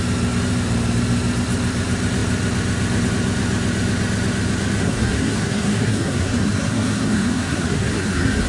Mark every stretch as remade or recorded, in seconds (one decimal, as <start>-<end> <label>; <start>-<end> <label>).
0.0-4.8 recorded; 4.8-8.5 remade